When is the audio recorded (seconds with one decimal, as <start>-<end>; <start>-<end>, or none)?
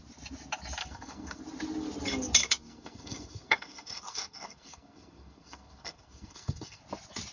0.0-0.8; 1.4-2.4; 6.8-7.3